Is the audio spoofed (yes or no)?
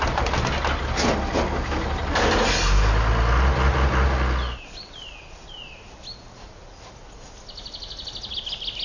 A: no